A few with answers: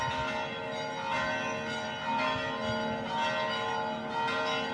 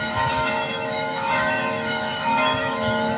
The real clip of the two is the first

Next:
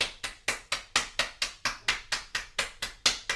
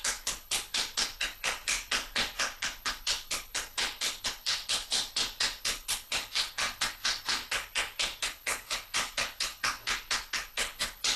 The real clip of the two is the first